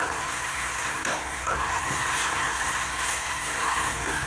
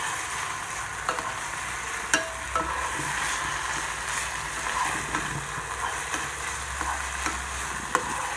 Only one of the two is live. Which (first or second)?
second